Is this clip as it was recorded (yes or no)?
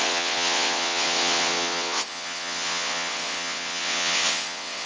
no